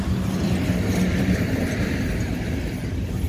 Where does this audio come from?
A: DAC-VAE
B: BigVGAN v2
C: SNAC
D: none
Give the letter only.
B